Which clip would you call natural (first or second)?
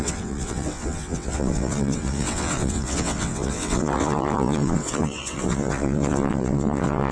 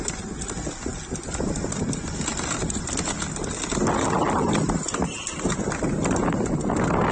second